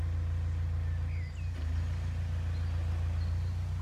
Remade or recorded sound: recorded